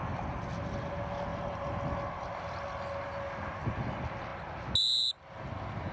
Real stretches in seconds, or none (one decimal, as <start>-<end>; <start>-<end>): 0.0-5.9